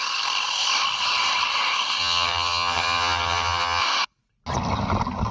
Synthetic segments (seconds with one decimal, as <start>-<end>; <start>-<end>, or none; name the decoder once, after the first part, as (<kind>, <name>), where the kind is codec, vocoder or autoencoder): 2.0-3.8 (vocoder, HiFi-GAN)